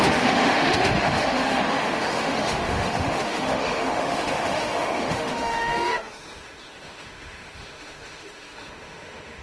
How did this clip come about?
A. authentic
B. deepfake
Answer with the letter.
B